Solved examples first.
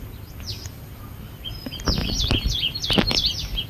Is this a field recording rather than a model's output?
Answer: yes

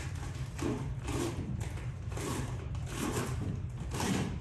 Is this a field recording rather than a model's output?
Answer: no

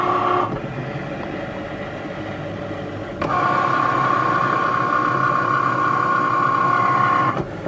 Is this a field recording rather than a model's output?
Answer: yes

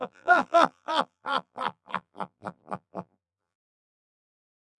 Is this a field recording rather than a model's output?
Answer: no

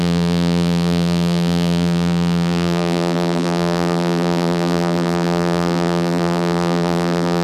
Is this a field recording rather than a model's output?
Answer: no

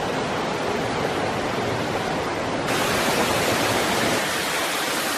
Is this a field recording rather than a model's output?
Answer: yes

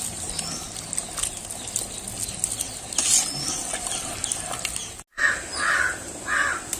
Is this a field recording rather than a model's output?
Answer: yes